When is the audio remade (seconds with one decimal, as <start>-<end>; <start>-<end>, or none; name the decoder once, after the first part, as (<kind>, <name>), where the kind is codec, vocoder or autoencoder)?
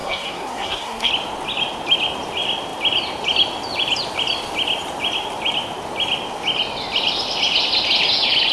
0.0-1.1 (codec, SNAC)